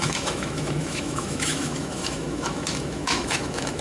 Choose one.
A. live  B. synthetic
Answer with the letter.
B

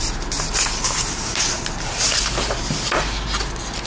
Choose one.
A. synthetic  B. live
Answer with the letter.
B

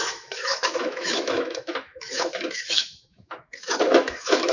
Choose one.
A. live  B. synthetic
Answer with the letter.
B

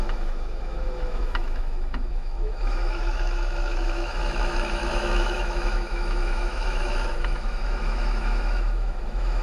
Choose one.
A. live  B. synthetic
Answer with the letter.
B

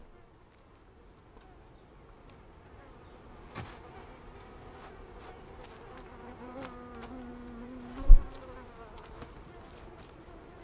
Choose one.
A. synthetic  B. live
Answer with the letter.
B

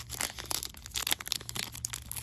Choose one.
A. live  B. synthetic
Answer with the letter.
A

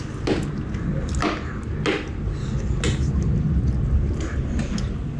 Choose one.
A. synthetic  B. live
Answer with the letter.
B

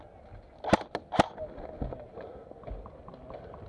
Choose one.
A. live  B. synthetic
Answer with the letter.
A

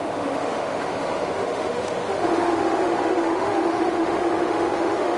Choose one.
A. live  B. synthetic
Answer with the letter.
B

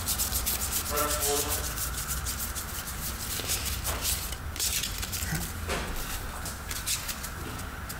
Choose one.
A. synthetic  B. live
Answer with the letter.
B